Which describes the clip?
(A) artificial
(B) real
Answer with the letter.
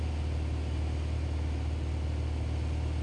B